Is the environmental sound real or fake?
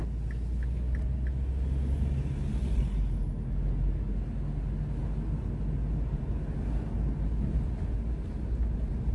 real